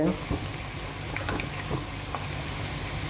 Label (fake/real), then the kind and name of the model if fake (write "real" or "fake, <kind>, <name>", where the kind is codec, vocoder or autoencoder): real